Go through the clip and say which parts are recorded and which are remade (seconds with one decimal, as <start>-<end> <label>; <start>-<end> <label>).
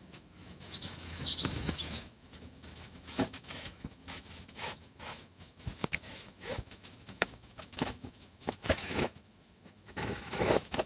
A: 0.0-10.9 remade